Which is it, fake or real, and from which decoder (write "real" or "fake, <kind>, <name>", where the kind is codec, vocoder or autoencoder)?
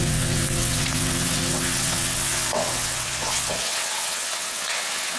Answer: fake, vocoder, WaveNeXt